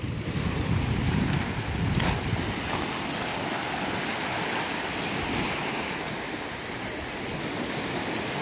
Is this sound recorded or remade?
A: recorded